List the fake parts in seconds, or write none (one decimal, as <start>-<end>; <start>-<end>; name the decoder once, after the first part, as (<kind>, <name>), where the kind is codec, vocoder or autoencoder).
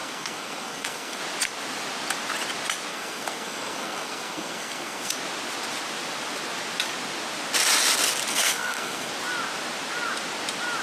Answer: 0.0-1.2 (codec, SNAC); 2.9-5.1; 8.3-9.1